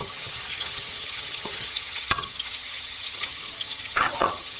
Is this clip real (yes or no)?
no